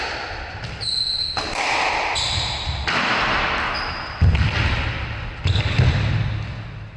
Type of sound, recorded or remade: recorded